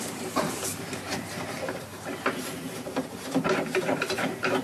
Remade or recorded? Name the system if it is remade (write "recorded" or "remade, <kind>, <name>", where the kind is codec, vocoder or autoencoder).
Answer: remade, vocoder, BigVGAN v2